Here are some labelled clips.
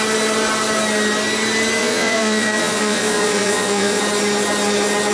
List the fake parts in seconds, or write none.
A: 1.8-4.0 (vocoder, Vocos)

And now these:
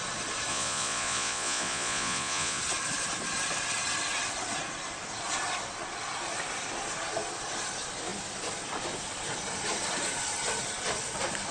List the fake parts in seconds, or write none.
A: 0.5-2.6 (vocoder, Vocos)

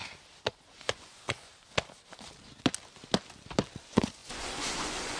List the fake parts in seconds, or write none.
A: 0.5-1.5 (vocoder, Vocos); 3.8-5.2

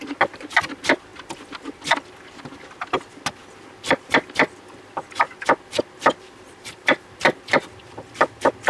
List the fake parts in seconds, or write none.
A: none

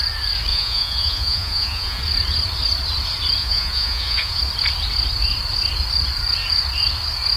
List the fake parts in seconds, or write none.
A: 0.5-2.0 (vocoder, Vocos); 3.4-4.4

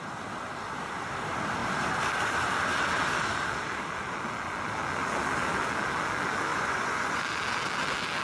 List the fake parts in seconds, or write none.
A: 6.5-7.2 (vocoder, Vocos)